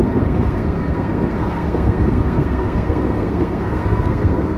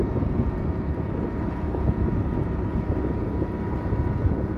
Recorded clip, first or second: second